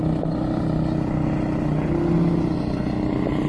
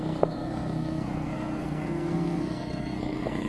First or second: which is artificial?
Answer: second